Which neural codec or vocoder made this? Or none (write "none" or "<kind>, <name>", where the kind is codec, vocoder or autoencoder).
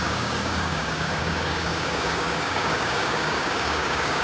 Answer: codec, DAC